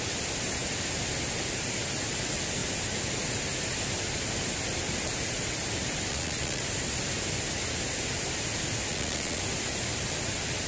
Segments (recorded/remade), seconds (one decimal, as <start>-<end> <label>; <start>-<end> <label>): 0.0-6.1 recorded; 6.1-6.6 remade; 6.6-8.9 recorded; 8.9-9.4 remade; 9.4-10.7 recorded